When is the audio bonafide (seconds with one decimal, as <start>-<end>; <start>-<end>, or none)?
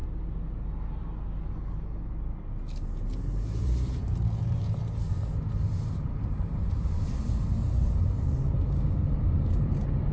0.0-3.6; 4.8-5.6